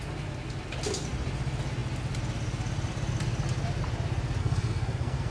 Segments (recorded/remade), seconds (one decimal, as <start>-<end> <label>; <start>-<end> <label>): 0.0-4.4 recorded; 4.4-5.3 remade